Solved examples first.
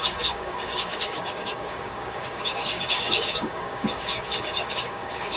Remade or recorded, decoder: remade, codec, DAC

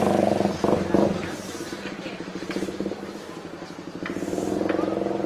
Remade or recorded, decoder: recorded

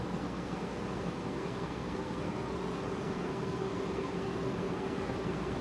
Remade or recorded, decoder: remade, codec, SNAC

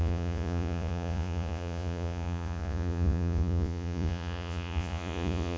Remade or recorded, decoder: remade, vocoder, Vocos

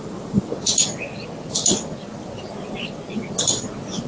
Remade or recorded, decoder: recorded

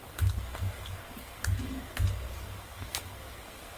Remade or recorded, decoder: remade, codec, SNAC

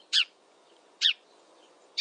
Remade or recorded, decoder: remade, vocoder, Vocos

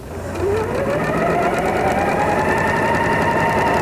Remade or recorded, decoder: recorded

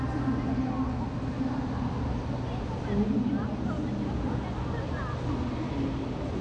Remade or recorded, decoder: recorded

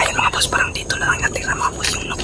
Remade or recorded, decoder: recorded